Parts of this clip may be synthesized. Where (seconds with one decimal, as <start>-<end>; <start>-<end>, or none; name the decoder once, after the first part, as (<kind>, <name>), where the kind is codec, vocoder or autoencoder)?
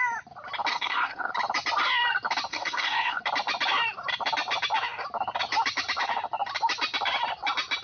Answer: 0.7-1.3 (codec, SNAC); 2.5-3.2